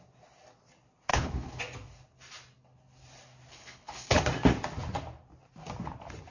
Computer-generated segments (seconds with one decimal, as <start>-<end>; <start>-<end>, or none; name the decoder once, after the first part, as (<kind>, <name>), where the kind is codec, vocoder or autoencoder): 1.1-1.6 (codec, HILCodec); 3.5-4.2